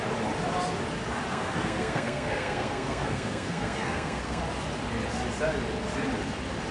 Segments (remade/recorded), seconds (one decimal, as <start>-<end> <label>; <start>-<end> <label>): 0.0-1.3 recorded; 1.3-4.4 remade; 4.4-6.7 recorded